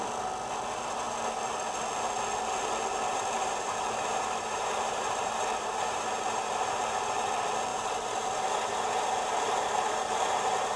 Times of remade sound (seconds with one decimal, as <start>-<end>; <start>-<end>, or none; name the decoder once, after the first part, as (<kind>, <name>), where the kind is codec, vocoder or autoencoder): 3.1-7.3 (vocoder, BigVGAN v2); 7.7-10.8